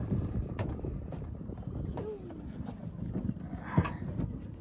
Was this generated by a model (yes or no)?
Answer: no